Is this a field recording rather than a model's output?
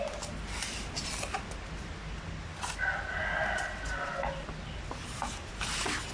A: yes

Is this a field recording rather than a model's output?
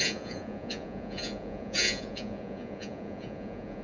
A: no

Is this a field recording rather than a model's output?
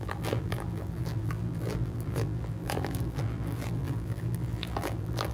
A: no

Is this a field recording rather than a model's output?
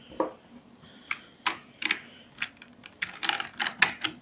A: yes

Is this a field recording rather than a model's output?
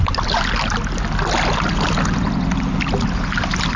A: yes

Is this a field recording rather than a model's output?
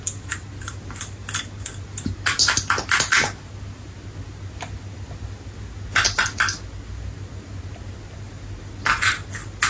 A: yes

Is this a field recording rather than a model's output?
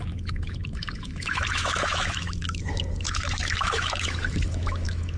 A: no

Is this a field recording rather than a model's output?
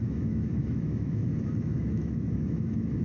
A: no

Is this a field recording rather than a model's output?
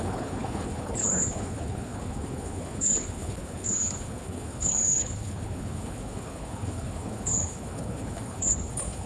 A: no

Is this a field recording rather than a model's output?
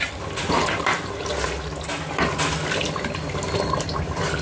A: yes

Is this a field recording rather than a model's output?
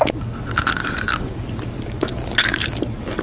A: yes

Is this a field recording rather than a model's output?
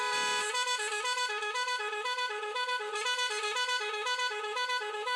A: yes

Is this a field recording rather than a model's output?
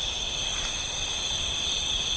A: yes